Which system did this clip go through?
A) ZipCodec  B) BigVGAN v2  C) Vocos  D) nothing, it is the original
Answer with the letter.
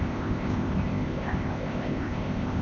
A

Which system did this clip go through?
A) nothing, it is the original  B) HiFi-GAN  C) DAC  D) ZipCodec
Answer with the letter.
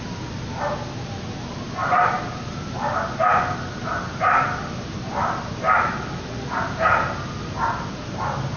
A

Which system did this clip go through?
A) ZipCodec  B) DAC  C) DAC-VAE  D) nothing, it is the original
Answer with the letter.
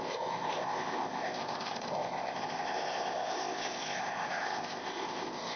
A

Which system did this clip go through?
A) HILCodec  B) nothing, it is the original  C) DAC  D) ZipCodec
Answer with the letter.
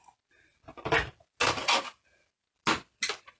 B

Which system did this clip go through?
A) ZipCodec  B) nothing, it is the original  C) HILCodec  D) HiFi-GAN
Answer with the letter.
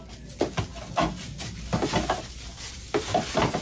B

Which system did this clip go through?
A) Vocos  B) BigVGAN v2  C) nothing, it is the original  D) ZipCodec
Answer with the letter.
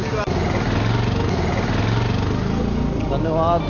C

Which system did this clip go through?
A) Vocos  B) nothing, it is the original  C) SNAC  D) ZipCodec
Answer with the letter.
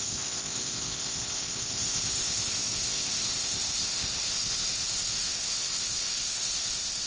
D